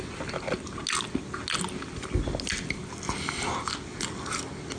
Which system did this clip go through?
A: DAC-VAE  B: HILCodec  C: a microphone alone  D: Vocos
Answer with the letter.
C